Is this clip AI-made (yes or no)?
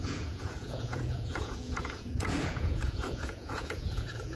yes